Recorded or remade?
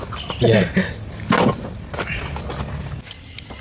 recorded